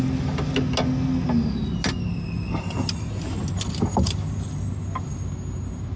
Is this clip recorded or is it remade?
recorded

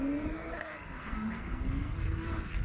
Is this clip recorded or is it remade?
remade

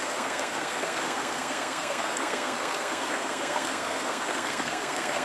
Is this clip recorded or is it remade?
remade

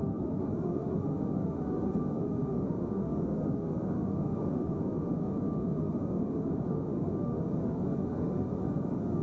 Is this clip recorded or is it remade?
remade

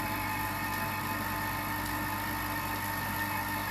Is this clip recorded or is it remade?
recorded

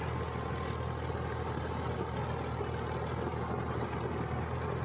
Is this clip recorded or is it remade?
recorded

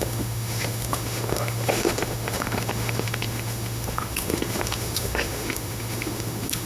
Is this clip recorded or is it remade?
remade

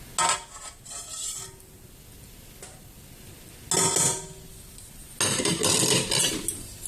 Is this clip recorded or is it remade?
recorded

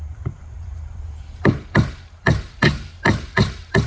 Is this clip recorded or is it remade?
remade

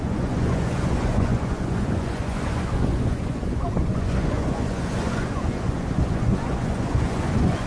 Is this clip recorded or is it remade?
remade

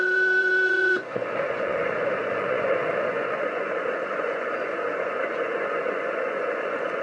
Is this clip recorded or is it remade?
remade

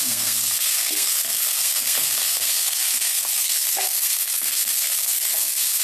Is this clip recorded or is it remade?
remade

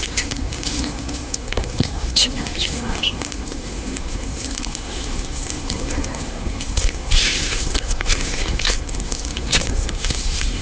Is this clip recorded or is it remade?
remade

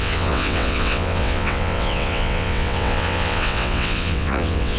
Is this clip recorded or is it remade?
remade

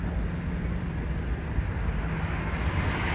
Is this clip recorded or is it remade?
recorded